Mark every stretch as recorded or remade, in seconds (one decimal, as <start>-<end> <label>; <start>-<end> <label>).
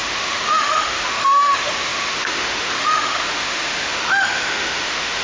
0.0-5.2 remade